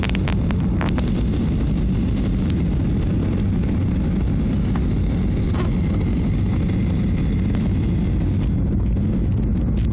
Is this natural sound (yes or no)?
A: yes